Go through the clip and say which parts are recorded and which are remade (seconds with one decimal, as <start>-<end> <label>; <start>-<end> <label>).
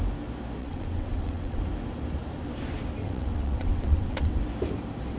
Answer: 0.0-0.6 recorded; 0.6-1.6 remade; 1.6-3.0 recorded; 3.0-4.4 remade; 4.4-5.2 recorded